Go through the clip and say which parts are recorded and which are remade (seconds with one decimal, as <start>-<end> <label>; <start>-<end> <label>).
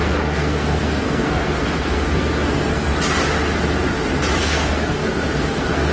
0.0-2.9 remade; 2.9-4.4 recorded; 4.4-5.9 remade